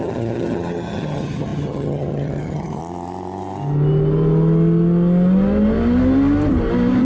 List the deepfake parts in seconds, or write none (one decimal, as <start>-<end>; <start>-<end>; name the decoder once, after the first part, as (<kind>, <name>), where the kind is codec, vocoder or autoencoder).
0.0-2.8 (vocoder, HiFi-GAN)